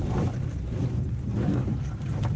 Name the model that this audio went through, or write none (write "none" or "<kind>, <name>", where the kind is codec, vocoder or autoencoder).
none